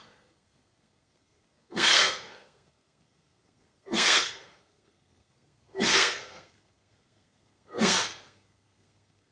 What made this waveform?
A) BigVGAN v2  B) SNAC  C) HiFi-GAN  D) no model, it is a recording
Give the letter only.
B